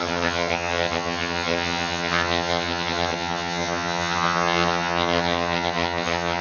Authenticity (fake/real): fake